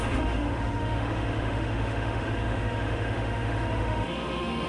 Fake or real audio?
fake